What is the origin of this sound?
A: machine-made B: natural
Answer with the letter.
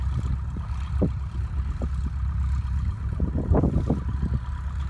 B